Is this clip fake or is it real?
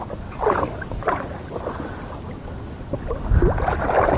real